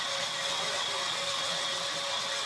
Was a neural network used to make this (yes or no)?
yes